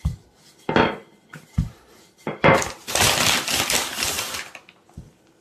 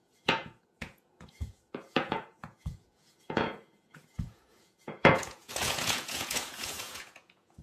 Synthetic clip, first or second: second